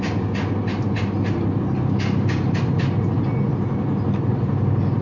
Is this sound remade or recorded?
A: recorded